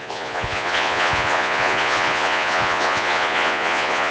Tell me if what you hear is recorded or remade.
remade